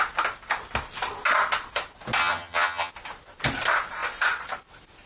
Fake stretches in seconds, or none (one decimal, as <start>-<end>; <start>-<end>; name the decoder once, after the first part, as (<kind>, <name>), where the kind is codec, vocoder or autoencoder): 2.2-2.9 (vocoder, HiFi-GAN)